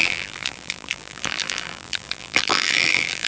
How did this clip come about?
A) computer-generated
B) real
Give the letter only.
A